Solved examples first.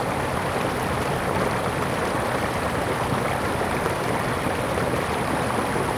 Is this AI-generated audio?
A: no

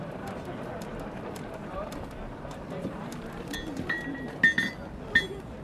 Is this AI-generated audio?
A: no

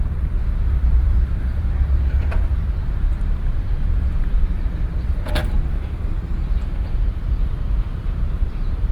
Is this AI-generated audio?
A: yes